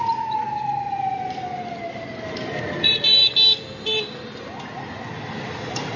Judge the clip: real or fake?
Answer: real